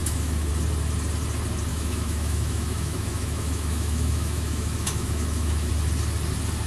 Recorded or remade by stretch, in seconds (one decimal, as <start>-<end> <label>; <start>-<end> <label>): 0.0-0.5 remade; 0.5-1.7 recorded; 1.7-5.7 remade; 5.7-6.7 recorded